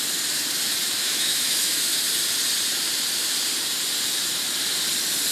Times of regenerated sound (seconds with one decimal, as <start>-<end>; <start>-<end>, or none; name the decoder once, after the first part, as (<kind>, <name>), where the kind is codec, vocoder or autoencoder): 1.0-2.0 (autoencoder, DAC-VAE)